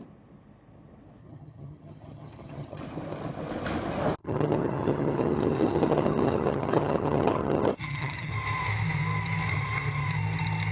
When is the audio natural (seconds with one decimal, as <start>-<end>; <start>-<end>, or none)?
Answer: 0.0-1.2; 2.8-4.2; 8.3-10.7